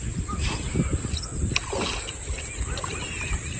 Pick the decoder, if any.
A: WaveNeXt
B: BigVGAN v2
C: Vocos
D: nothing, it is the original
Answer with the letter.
D